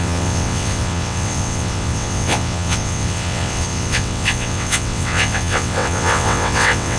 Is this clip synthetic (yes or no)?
yes